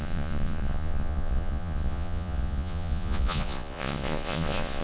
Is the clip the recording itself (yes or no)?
no